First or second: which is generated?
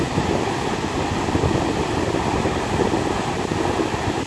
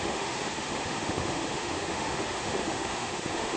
second